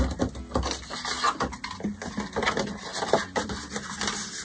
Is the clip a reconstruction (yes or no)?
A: no